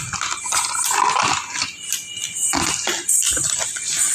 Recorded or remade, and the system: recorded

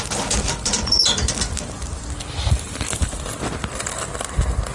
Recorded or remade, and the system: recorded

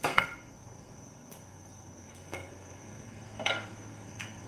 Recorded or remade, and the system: remade, codec, SNAC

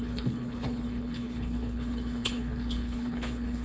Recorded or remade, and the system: remade, codec, HILCodec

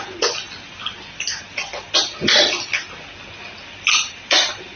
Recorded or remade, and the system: recorded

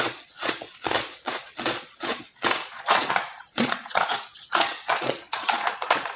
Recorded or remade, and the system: remade, vocoder, Vocos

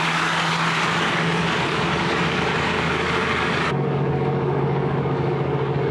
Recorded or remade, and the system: remade, codec, DAC